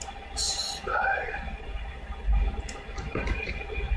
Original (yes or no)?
yes